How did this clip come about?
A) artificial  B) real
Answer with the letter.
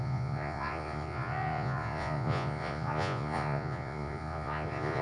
A